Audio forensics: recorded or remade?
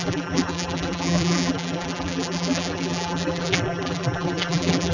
remade